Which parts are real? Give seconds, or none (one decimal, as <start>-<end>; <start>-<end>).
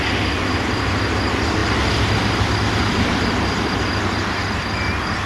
0.0-5.3